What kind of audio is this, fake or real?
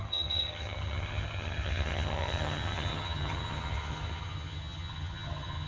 fake